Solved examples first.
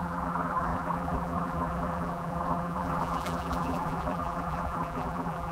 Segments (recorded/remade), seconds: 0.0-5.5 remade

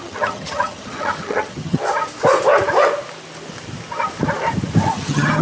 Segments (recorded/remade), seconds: 0.0-1.8 remade; 1.8-4.9 recorded; 4.9-5.4 remade